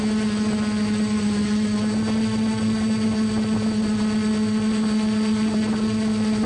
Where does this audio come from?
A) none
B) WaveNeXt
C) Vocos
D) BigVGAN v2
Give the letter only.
A